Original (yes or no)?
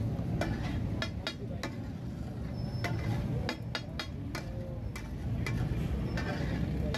yes